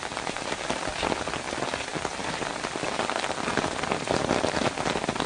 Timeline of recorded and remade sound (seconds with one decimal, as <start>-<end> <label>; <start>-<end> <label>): 0.0-5.3 recorded